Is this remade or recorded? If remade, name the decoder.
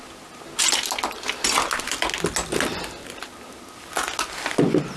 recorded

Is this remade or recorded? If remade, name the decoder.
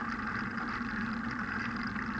remade, vocoder, BigVGAN v2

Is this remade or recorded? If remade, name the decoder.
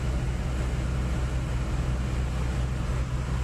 recorded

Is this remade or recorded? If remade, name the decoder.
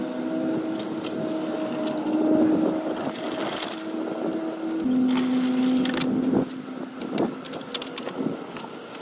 recorded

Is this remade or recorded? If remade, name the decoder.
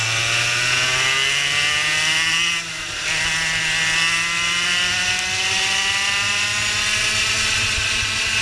recorded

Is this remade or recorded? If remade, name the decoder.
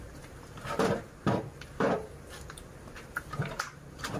remade, vocoder, BigVGAN v2